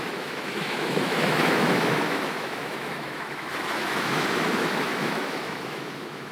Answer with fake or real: fake